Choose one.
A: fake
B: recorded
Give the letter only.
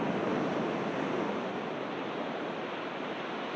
B